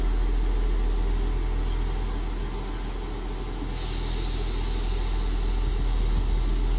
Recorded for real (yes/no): yes